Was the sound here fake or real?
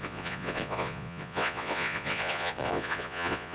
fake